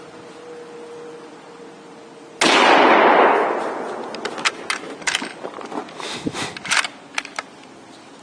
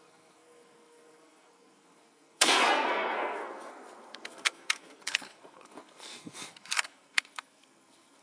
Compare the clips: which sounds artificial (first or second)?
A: second